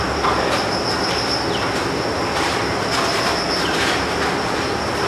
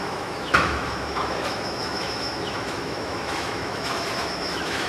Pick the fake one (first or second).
second